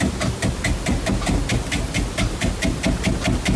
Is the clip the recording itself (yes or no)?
yes